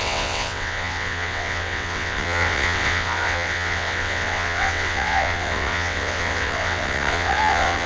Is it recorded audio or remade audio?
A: remade